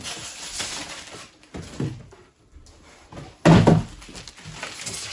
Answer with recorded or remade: recorded